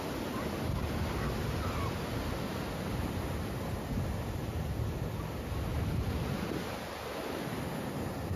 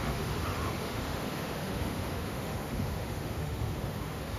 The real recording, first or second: first